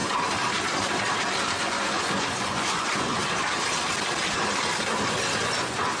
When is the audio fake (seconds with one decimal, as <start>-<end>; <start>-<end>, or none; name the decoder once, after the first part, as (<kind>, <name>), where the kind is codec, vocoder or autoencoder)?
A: 1.6-3.2 (vocoder, Vocos); 5.4-6.0